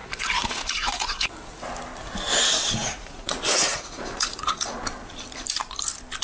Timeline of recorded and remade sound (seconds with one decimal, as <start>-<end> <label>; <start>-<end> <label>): 0.0-1.3 remade; 1.3-2.8 recorded; 2.8-4.8 remade; 4.8-6.2 recorded